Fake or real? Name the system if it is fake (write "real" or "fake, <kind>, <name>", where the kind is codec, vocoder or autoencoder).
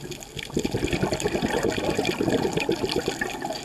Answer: real